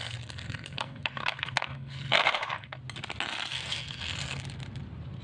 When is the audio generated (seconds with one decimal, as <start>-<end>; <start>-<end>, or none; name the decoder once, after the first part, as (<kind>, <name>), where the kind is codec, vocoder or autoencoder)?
0.0-2.8 (codec, SNAC); 3.5-4.4